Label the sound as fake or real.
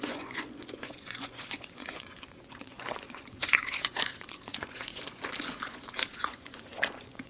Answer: fake